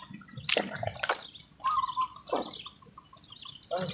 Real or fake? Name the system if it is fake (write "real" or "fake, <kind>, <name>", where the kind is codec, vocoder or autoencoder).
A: real